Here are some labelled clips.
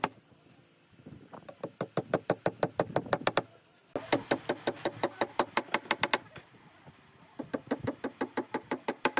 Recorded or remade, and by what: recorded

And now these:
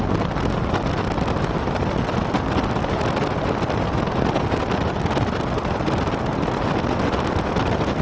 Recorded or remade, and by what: recorded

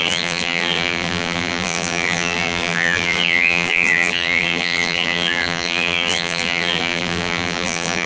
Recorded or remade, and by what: remade, vocoder, BigVGAN v2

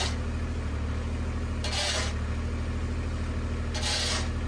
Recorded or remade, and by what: recorded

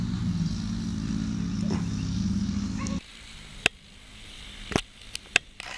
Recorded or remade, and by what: recorded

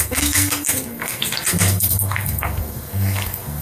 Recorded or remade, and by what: remade, codec, SNAC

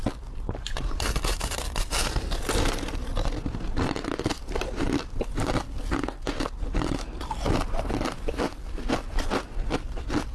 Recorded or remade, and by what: remade, vocoder, BigVGAN v2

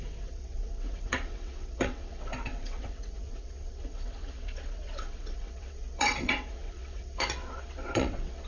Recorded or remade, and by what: remade, vocoder, WaveNeXt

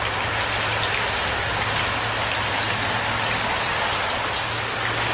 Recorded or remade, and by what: recorded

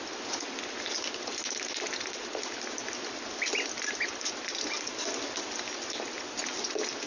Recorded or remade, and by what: recorded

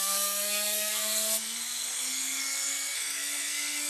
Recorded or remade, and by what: remade, codec, SNAC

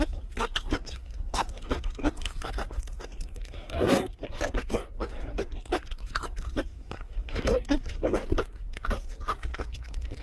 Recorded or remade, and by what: remade, codec, SNAC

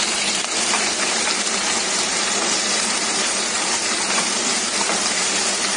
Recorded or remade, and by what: remade, vocoder, BigVGAN v2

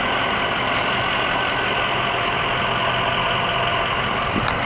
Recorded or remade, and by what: recorded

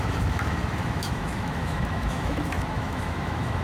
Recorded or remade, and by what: remade, autoencoder, DAC-VAE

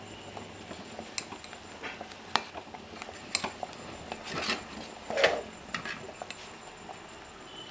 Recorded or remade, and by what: recorded